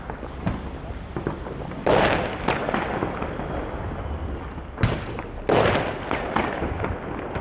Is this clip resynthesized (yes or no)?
no